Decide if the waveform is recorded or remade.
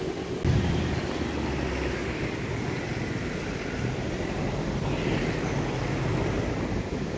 recorded